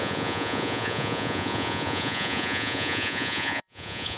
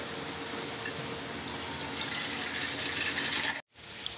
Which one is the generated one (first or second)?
first